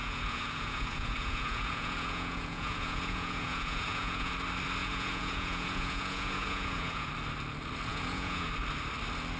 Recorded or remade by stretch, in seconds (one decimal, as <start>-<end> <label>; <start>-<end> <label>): 0.0-4.3 remade; 4.3-4.8 recorded; 4.8-7.1 remade; 7.1-7.9 recorded; 7.9-8.5 remade; 8.5-9.4 recorded